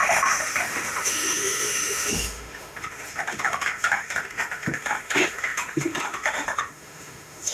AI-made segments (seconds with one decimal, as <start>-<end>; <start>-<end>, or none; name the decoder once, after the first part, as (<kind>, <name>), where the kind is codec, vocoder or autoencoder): 0.0-7.5 (autoencoder, DAC-VAE)

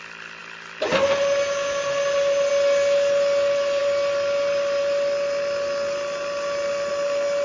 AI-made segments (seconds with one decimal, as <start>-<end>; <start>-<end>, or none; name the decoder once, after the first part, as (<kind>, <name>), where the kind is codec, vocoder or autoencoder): none

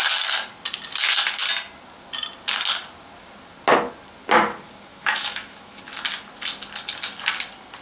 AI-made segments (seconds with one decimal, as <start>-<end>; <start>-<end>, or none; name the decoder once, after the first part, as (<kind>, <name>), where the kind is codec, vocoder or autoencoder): 4.9-5.8 (autoencoder, DAC-VAE)

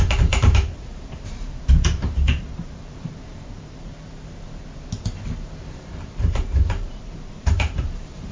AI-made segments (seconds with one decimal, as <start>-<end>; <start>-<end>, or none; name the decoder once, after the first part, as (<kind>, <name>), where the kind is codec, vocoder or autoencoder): 0.0-3.9 (vocoder, BigVGAN v2); 6.3-8.3